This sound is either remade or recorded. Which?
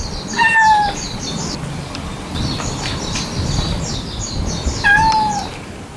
recorded